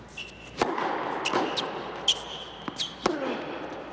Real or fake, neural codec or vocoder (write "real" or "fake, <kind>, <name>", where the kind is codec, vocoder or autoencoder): real